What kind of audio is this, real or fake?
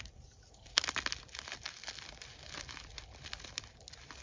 real